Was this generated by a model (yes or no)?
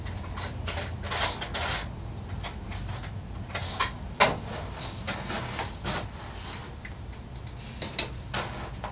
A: no